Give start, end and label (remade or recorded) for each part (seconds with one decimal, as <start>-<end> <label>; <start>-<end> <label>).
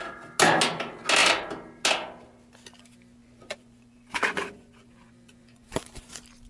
0.0-3.2 recorded; 3.2-6.1 remade; 6.1-6.5 recorded